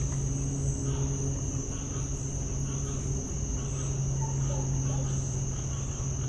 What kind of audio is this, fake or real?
real